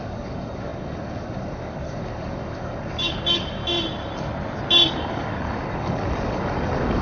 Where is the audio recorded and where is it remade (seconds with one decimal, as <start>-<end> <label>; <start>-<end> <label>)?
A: 0.0-3.6 remade; 3.6-4.9 recorded; 4.9-7.0 remade

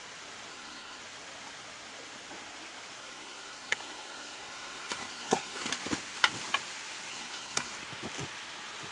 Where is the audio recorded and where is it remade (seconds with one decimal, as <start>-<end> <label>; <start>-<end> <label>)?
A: 0.0-0.5 recorded; 0.5-1.0 remade; 1.0-3.0 recorded; 3.0-5.7 remade; 5.7-7.1 recorded; 7.1-7.7 remade; 7.7-8.9 recorded

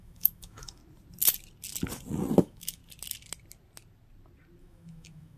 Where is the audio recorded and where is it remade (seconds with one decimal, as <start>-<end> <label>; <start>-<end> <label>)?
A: 0.0-0.8 remade; 0.8-2.4 recorded; 2.4-2.8 remade; 2.8-4.6 recorded; 4.6-5.4 remade

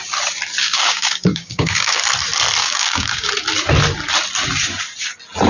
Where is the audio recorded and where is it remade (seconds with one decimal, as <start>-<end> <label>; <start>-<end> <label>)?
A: 0.0-0.6 recorded; 0.6-2.0 remade; 2.0-2.6 recorded; 2.6-3.3 remade; 3.3-5.5 recorded